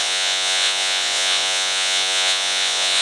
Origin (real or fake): fake